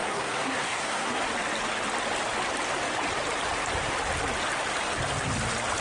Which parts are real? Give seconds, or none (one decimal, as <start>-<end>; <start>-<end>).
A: 1.2-5.8